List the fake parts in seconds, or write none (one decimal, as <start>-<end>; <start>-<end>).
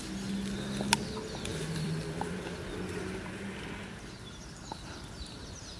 1.5-5.0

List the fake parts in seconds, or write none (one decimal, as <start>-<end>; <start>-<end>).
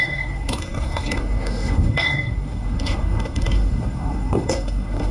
0.0-5.1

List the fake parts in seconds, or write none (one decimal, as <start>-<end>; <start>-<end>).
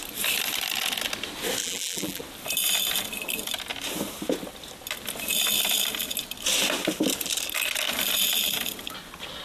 1.6-2.2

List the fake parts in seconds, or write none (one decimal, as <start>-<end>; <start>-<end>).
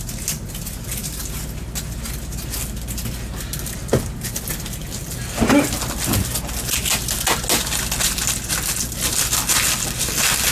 none